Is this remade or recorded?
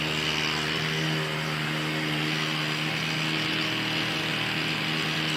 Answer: recorded